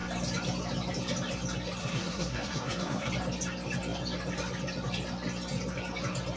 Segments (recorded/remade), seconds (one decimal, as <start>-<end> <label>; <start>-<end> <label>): 0.0-1.8 recorded; 1.8-3.1 remade; 3.1-6.4 recorded